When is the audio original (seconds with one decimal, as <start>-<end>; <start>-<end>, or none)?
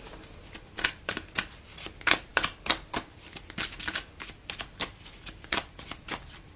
none